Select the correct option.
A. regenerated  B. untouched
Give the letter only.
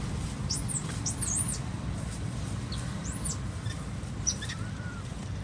B